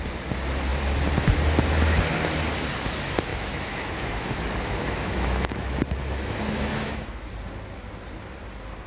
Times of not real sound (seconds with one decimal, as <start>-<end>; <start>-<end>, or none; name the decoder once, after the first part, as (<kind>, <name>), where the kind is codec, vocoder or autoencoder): 3.3-7.3 (autoencoder, DAC-VAE)